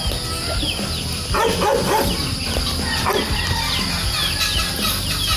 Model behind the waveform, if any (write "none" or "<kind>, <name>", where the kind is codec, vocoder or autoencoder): none